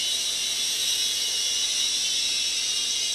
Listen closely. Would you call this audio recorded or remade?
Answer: recorded